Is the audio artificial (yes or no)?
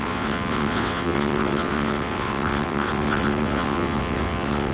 yes